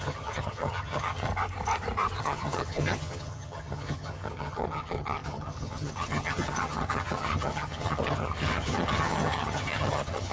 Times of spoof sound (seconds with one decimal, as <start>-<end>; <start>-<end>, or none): 0.0-1.3; 2.2-10.3